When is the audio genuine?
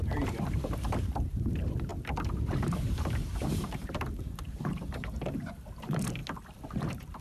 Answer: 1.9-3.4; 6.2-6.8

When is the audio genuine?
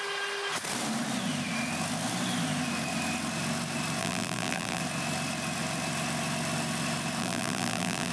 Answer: 0.0-4.0; 4.8-7.2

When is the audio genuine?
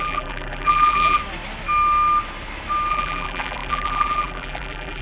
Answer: 1.2-2.9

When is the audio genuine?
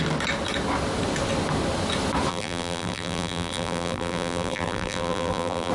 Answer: 0.0-2.3